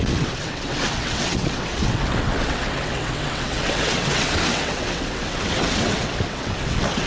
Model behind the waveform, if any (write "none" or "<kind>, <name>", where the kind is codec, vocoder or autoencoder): vocoder, WaveNeXt